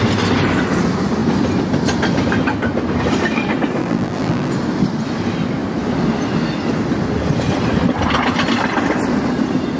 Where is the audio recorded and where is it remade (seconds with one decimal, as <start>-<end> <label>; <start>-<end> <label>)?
0.0-3.8 recorded; 3.8-4.5 remade; 4.5-9.8 recorded

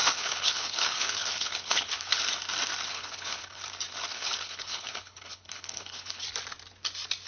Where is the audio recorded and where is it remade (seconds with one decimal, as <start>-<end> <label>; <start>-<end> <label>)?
0.0-2.2 remade; 2.2-2.9 recorded; 2.9-3.6 remade; 3.6-4.1 recorded; 4.1-6.2 remade; 6.2-7.3 recorded

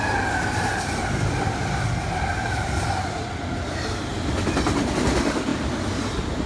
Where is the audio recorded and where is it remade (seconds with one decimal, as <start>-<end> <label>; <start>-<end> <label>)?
0.0-6.5 recorded

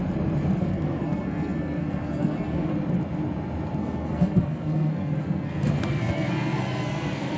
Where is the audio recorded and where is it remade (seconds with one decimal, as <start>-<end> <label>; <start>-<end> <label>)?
0.0-0.6 recorded; 0.6-2.8 remade; 2.8-3.8 recorded; 3.8-7.4 remade

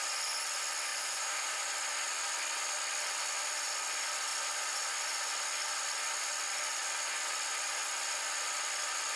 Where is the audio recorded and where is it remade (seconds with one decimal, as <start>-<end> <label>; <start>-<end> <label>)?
0.0-0.9 recorded; 0.9-1.7 remade; 1.7-9.2 recorded